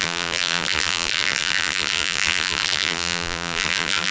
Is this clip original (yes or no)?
no